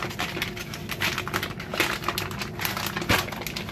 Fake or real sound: real